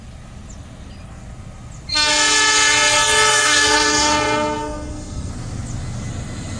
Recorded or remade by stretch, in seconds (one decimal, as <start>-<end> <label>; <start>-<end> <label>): 0.0-3.3 recorded; 3.3-5.3 remade; 5.3-6.6 recorded